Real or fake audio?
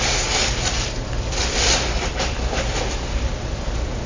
real